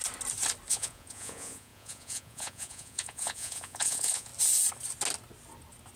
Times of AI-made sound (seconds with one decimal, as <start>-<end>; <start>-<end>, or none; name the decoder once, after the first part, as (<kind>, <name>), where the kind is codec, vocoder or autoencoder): 0.7-4.3 (vocoder, Vocos)